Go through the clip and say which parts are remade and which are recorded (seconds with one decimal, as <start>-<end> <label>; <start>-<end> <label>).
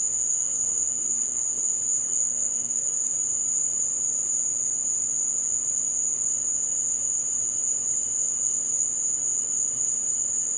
0.0-1.7 remade; 1.7-2.1 recorded; 2.1-3.1 remade; 3.1-10.6 recorded